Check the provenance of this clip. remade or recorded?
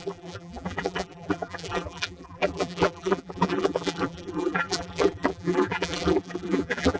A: remade